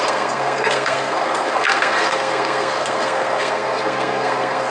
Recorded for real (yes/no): no